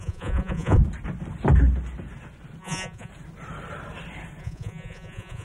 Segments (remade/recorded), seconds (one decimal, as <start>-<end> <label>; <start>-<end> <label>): 0.0-0.8 remade; 0.8-2.6 recorded; 2.6-3.1 remade; 3.1-4.4 recorded; 4.4-5.4 remade